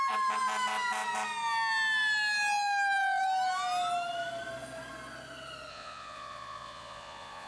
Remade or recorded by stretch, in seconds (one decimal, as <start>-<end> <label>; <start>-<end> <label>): 0.0-5.7 recorded; 5.7-7.5 remade